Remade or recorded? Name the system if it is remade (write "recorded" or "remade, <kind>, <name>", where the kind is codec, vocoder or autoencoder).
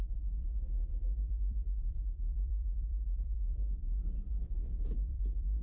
remade, vocoder, BigVGAN v2